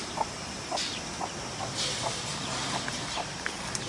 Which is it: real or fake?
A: real